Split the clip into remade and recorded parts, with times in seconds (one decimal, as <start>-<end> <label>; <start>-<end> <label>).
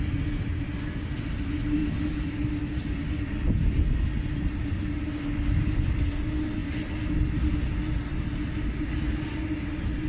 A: 0.0-10.1 recorded